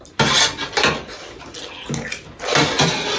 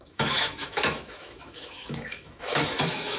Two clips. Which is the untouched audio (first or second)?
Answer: first